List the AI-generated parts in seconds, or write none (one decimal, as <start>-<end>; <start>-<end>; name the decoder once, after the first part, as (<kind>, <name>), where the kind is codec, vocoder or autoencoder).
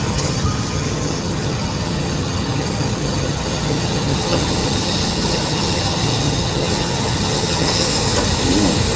0.0-7.9 (vocoder, HiFi-GAN)